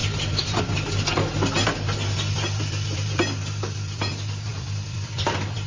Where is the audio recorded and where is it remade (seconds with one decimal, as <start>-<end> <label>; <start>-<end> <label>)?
0.0-0.6 remade; 0.6-4.5 recorded; 4.5-5.7 remade